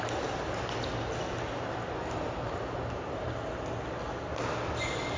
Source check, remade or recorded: recorded